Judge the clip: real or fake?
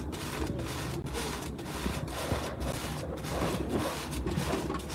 real